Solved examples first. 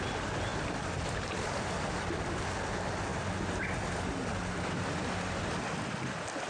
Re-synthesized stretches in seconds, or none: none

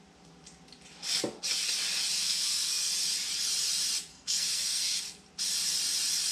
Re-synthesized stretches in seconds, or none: 2.2-2.9 (codec, SNAC); 4.1-5.0

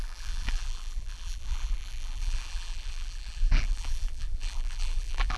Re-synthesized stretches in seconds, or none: 0.0-5.4 (vocoder, BigVGAN v2)

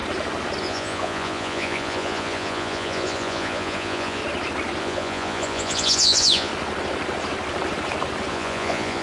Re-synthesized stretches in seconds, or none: 0.6-4.2 (vocoder, Vocos); 4.8-6.5; 8.3-9.0

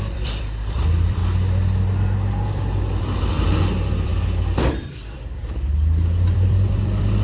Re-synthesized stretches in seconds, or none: 0.0-1.2 (vocoder, BigVGAN v2); 3.0-4.1; 4.7-7.2

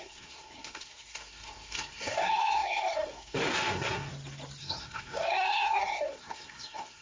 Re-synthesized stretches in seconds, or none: 0.0-4.1 (codec, SNAC); 4.6-7.0

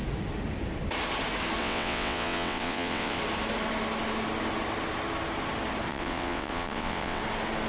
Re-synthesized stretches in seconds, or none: 1.6-3.2 (vocoder, WaveNeXt); 5.9-7.2